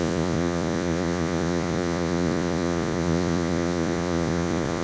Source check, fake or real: fake